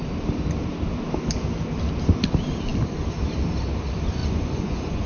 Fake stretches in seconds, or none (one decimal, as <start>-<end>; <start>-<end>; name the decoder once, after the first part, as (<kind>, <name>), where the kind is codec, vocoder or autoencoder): 4.2-5.1 (vocoder, Vocos)

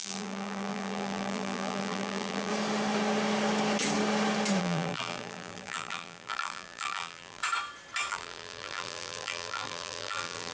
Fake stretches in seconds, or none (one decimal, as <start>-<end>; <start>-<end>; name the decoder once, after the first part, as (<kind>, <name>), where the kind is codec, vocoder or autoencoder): 0.0-2.5 (vocoder, BigVGAN v2); 4.6-7.4; 8.1-10.5

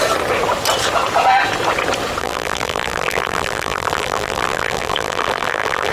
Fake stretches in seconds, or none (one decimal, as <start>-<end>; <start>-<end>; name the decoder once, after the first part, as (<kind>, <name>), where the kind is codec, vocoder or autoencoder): 2.2-5.9 (vocoder, BigVGAN v2)

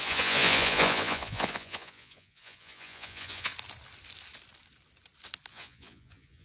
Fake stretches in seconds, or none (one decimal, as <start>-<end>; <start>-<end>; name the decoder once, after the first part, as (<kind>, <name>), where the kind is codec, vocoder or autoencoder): 0.0-3.5 (vocoder, Vocos); 5.5-6.4

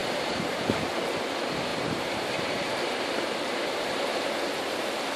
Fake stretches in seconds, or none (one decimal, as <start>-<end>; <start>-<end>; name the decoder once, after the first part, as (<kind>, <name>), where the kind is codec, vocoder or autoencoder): 0.0-0.9 (vocoder, BigVGAN v2); 1.7-4.3

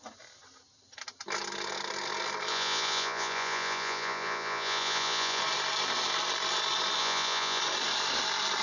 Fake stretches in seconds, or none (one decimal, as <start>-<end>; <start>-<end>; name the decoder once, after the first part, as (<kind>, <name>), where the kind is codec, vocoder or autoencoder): 2.5-5.4 (vocoder, Vocos); 7.0-7.6

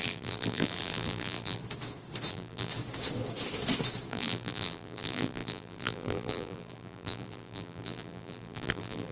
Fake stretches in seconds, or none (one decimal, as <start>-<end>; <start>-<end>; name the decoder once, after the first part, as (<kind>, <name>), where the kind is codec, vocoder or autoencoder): 0.0-1.6 (vocoder, BigVGAN v2); 2.3-2.7; 4.1-9.1

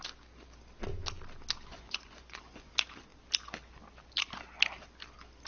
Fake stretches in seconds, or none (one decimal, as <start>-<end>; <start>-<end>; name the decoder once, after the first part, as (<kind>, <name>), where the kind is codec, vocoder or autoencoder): 1.7-2.7 (vocoder, Vocos)